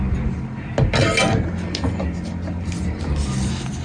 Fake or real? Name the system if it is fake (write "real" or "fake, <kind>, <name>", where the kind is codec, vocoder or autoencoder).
real